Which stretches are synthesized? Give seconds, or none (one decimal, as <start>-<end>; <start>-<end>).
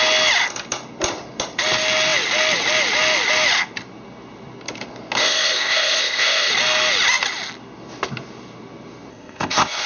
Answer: 5.2-6.5; 9.1-9.9